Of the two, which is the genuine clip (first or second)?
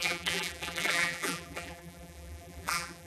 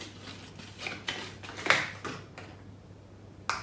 second